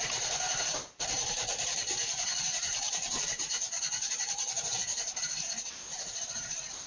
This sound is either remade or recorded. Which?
remade